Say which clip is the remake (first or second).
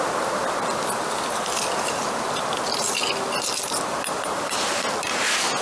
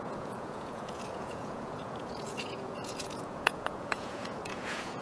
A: second